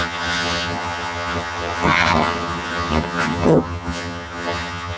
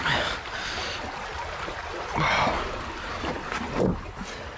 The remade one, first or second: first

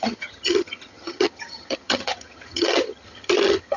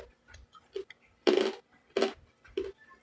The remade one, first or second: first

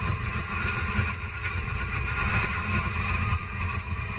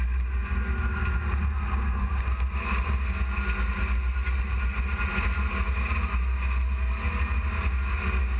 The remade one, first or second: first